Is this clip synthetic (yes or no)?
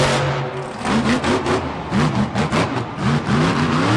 no